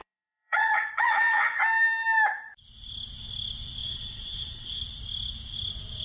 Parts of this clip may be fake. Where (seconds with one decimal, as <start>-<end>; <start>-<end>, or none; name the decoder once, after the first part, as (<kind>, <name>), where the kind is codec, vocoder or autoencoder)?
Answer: 0.0-1.6 (vocoder, WaveNeXt); 3.8-4.8